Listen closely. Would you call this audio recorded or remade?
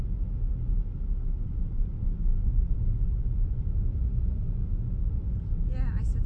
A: recorded